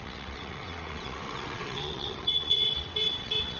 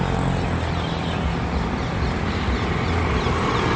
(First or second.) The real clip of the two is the second